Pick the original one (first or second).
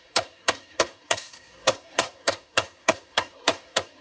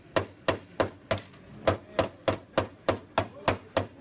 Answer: second